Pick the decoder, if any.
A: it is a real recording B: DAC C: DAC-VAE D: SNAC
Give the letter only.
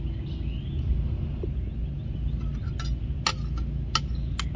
A